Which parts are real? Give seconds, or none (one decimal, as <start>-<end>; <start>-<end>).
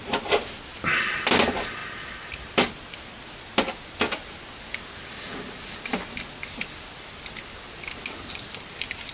0.0-9.1